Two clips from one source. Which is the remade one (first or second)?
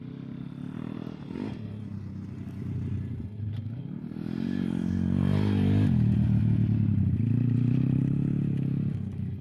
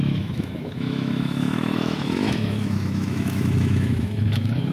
second